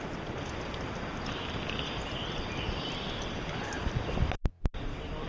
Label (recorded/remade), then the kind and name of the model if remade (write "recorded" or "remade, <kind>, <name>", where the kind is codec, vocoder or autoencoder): recorded